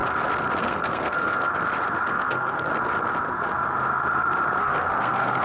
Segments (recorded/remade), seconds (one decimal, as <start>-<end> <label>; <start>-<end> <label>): 0.0-0.6 recorded; 0.6-1.5 remade; 1.5-2.1 recorded; 2.1-2.7 remade; 2.7-4.6 recorded; 4.6-5.4 remade